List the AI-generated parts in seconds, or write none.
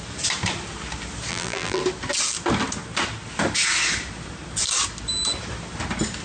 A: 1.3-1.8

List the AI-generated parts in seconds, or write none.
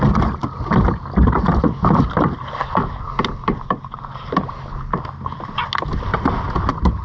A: none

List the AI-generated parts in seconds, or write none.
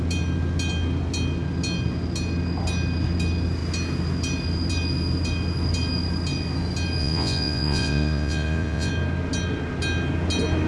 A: 7.0-8.9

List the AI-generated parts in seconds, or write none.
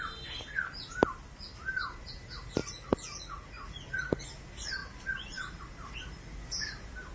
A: 2.6-4.2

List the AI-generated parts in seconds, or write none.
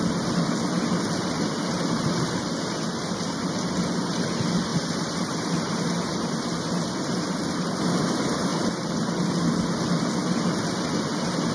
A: none